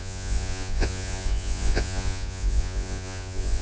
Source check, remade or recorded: remade